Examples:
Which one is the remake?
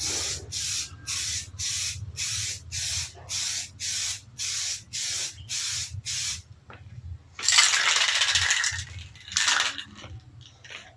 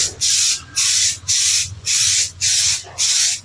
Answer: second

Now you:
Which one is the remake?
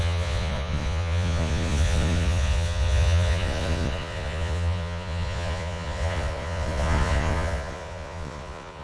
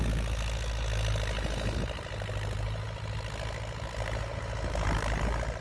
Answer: first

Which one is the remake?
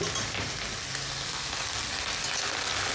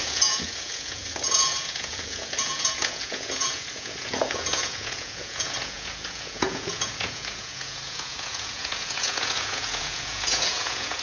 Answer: second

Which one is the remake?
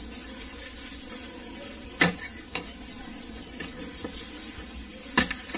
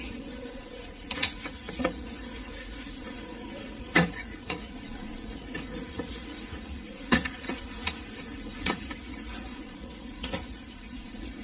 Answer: second